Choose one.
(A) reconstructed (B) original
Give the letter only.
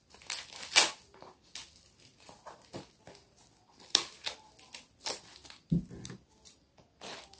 B